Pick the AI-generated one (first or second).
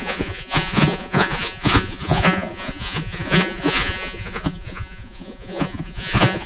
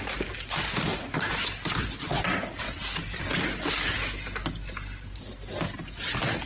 first